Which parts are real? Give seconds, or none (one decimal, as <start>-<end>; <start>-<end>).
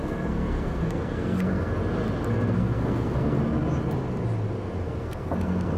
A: 1.7-2.3; 3.4-4.8